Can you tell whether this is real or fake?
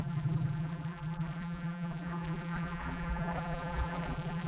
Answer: fake